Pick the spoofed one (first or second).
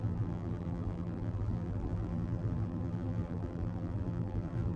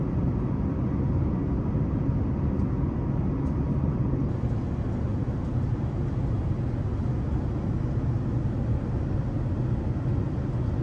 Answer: first